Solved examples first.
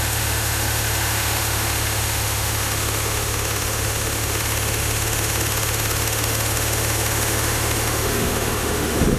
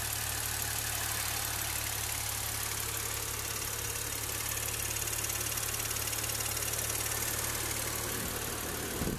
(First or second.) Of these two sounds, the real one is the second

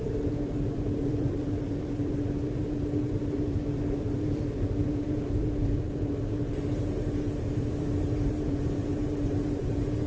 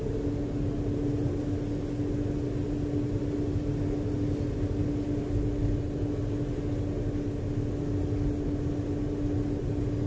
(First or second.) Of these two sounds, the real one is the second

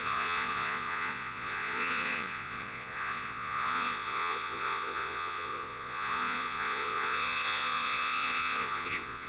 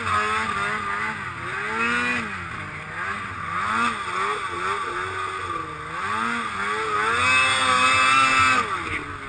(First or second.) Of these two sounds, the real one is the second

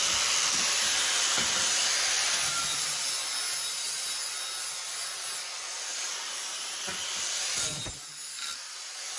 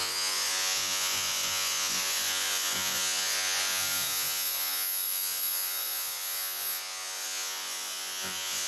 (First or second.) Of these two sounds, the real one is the first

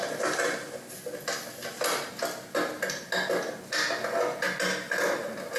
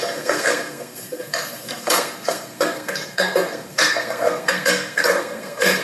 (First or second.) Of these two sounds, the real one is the first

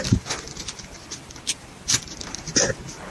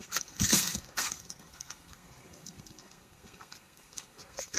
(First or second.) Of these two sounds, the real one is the first